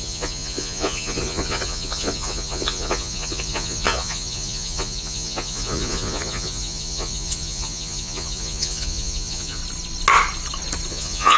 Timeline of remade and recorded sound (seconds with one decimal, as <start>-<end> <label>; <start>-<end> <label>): 0.0-9.6 remade; 9.6-10.9 recorded; 10.9-11.4 remade